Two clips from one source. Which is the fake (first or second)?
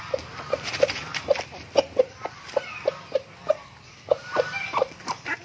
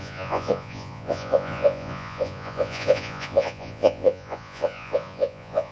second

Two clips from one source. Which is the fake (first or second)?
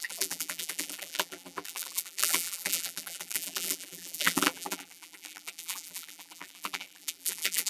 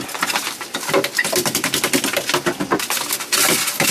first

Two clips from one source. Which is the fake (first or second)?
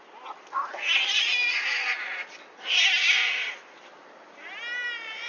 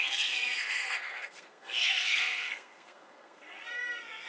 second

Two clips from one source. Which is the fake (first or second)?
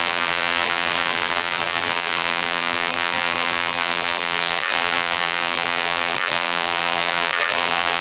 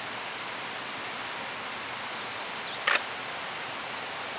first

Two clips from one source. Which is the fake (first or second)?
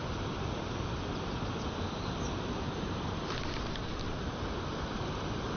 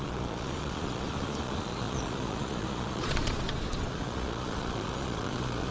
second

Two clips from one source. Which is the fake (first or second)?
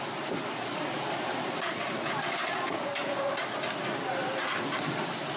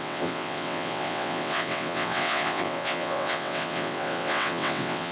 second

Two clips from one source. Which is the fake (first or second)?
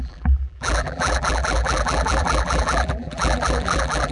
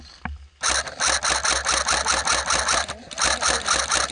first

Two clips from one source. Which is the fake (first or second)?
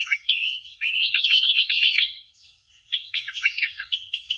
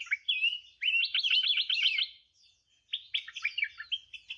first